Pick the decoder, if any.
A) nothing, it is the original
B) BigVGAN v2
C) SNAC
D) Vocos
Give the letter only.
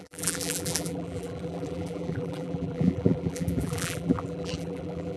B